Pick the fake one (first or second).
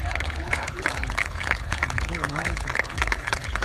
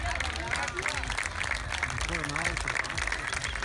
first